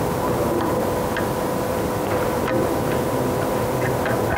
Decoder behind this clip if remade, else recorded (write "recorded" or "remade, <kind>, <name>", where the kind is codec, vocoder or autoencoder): recorded